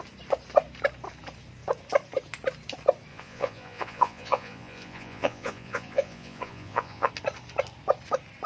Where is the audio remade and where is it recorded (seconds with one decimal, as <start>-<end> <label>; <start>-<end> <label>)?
0.0-3.1 recorded; 3.1-7.1 remade; 7.1-8.5 recorded